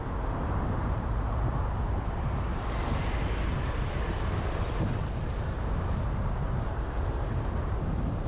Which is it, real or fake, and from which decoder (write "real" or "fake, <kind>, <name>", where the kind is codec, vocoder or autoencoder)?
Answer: fake, vocoder, BigVGAN v2